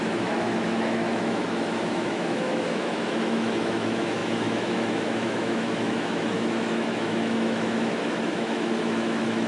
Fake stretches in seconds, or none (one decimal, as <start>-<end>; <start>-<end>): 0.0-9.5